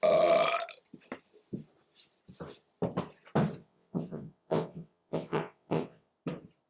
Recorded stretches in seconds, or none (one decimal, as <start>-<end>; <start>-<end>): 0.0-3.6; 6.1-6.7